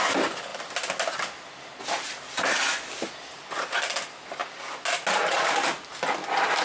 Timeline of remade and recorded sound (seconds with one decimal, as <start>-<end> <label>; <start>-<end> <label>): 0.0-6.6 recorded